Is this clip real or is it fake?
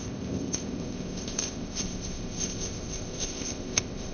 fake